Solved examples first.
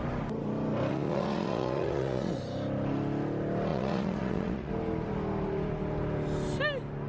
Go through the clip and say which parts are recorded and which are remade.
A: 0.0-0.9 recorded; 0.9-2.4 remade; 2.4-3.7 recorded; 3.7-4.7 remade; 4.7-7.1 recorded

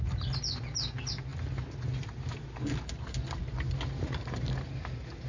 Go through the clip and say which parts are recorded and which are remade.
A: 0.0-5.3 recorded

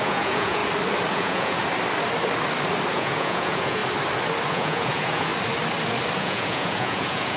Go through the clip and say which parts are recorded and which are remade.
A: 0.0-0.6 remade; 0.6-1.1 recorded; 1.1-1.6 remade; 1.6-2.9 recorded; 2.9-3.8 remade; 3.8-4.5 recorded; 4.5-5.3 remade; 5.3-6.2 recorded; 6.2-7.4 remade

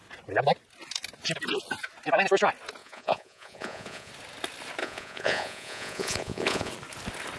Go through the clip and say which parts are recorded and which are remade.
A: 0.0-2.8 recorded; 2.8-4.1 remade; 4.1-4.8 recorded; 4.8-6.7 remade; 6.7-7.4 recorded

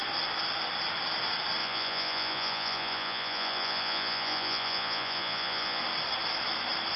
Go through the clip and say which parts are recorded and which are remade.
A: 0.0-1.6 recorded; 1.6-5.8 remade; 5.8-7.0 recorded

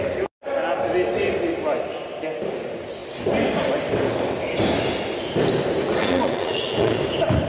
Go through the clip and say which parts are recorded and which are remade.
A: 0.0-6.0 recorded; 6.0-7.0 remade; 7.0-7.5 recorded

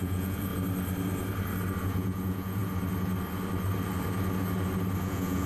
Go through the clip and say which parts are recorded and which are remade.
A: 0.0-0.5 remade; 0.5-1.8 recorded; 1.8-2.6 remade; 2.6-5.0 recorded; 5.0-5.5 remade

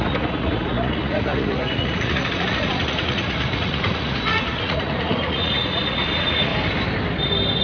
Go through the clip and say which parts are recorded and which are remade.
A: 0.0-6.5 remade; 6.5-7.6 recorded